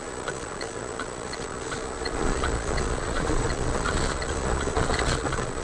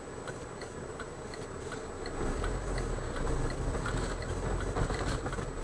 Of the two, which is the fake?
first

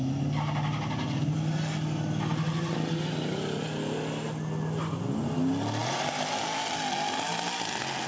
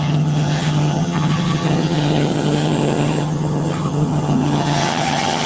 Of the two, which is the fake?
second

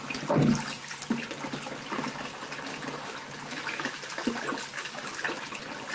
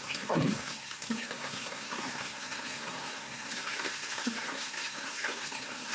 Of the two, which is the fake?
second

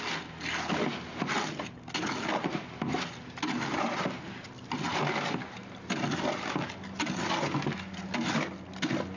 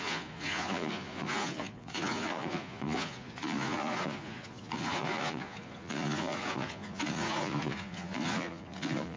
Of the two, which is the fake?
second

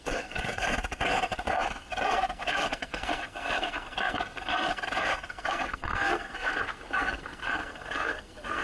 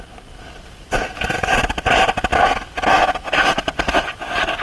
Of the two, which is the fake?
first